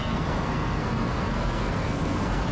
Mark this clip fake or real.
fake